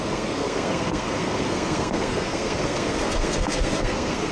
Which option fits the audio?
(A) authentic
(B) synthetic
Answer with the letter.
B